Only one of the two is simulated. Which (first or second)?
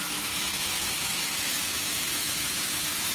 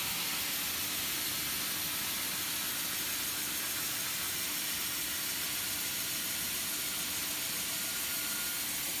first